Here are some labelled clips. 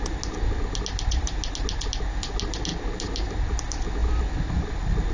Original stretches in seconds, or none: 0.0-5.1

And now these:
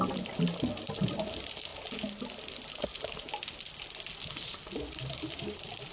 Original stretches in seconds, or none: 0.0-5.9

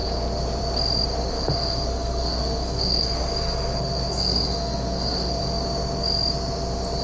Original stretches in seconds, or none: 0.0-1.3; 5.4-7.0

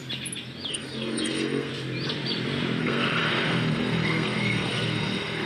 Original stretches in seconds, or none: 0.0-0.7; 1.7-2.8

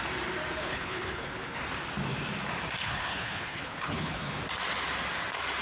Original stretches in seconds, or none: 0.0-0.6; 1.6-2.8; 4.4-5.6

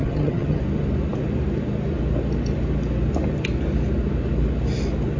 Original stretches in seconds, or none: 0.6-5.2